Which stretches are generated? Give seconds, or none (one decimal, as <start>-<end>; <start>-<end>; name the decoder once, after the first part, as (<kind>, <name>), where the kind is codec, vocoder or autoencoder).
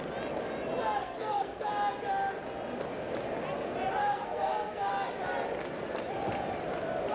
1.0-1.7 (codec, SNAC); 4.0-4.9